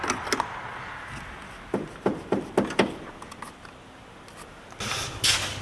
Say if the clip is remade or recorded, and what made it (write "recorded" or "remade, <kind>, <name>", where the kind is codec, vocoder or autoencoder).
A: recorded